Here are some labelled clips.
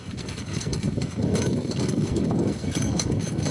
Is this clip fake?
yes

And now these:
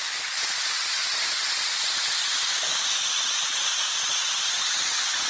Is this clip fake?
no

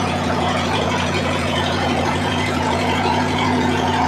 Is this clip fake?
yes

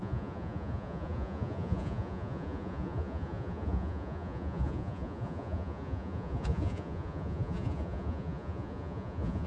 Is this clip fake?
yes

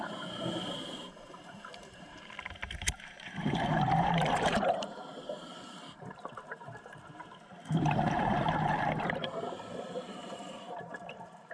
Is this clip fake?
yes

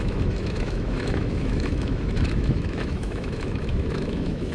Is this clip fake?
yes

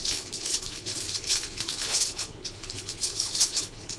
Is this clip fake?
yes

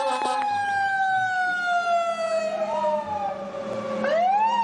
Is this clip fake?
no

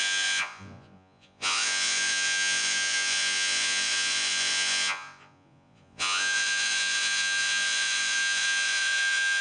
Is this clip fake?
yes